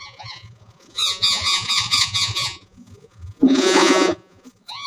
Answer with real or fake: fake